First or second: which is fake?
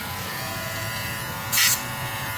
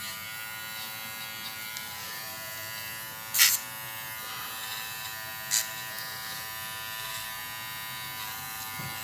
first